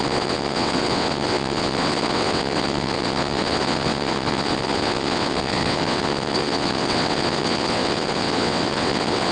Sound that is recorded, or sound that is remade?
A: remade